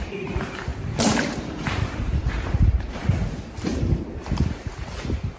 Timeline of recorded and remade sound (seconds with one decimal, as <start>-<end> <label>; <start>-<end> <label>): 0.0-5.4 remade